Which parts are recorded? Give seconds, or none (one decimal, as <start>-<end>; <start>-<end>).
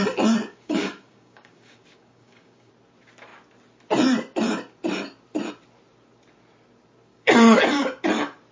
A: 0.0-0.4; 2.7-7.1; 7.6-8.5